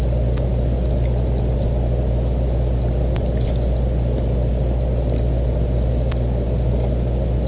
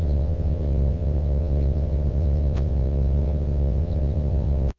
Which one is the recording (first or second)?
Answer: first